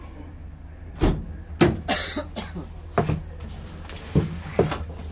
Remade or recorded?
recorded